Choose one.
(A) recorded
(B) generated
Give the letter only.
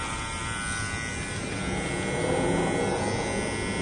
A